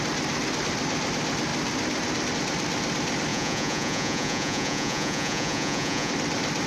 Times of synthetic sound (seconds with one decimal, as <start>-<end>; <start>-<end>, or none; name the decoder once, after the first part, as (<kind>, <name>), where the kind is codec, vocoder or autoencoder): 3.3-6.1 (vocoder, Vocos)

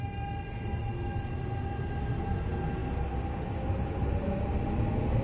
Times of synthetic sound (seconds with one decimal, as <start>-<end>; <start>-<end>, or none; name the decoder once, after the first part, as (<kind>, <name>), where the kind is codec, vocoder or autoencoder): none

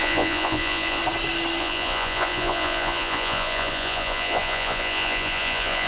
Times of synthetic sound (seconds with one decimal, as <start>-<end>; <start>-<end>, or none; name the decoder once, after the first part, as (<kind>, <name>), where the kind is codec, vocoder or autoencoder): 0.0-1.0 (vocoder, Vocos); 1.6-5.9

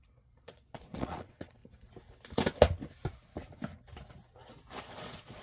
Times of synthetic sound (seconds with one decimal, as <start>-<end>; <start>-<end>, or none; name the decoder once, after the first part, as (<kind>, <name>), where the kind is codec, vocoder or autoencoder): 0.0-1.6 (vocoder, Vocos); 4.8-5.4

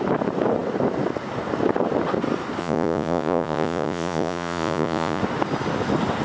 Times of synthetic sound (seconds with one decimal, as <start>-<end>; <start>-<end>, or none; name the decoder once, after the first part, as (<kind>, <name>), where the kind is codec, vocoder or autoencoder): 2.6-5.2 (vocoder, Vocos)

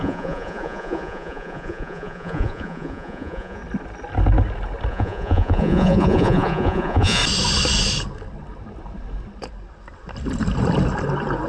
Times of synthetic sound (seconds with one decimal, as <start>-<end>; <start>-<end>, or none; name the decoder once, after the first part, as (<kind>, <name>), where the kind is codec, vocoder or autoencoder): 0.0-3.6 (vocoder, Vocos); 4.9-7.2